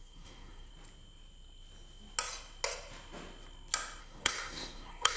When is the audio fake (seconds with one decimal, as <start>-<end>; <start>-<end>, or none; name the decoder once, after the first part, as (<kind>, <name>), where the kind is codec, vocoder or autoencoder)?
0.0-0.7 (codec, SNAC); 4.0-5.2